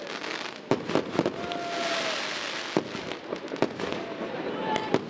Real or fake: real